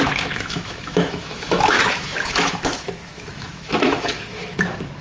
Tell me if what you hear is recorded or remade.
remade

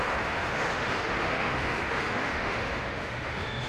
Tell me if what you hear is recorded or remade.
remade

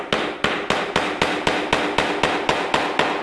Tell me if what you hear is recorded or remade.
recorded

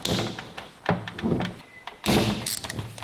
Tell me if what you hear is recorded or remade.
recorded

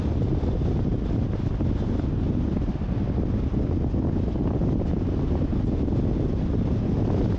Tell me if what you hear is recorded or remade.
recorded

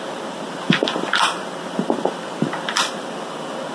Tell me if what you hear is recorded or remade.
recorded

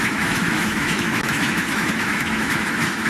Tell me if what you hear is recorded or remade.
remade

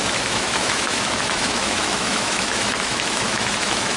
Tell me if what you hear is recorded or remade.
remade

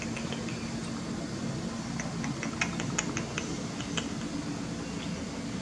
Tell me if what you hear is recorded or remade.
recorded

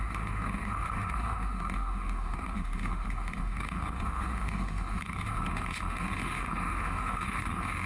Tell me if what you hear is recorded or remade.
remade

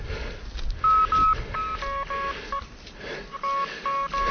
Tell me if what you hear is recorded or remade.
recorded